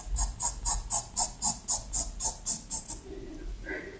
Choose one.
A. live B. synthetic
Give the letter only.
A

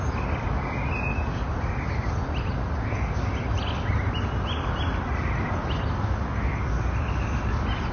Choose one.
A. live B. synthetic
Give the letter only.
A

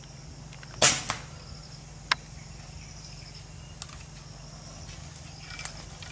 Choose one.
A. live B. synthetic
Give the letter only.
A